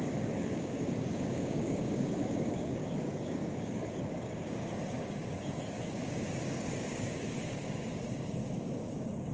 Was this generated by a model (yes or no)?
yes